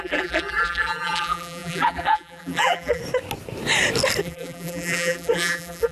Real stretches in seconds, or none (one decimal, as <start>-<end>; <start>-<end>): 3.0-4.2

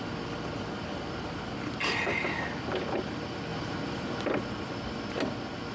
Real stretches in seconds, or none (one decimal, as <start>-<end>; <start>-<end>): 0.0-5.7

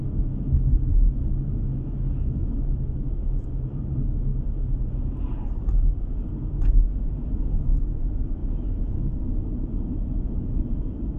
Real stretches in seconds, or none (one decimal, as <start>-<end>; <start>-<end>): 4.3-6.7

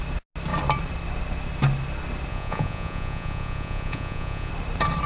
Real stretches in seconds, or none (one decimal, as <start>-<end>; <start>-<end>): 0.0-2.3; 4.5-5.1

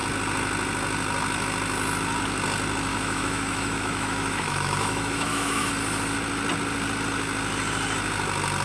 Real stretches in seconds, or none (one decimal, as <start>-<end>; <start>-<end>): 0.0-2.9; 5.7-8.6

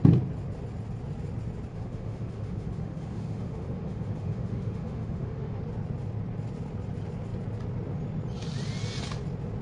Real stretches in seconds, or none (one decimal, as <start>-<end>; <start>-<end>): 0.0-1.7; 5.6-9.6